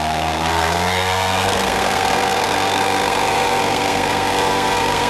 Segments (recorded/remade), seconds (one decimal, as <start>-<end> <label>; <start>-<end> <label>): 0.0-5.1 remade